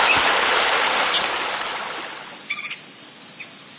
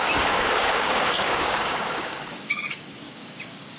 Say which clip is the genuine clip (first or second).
first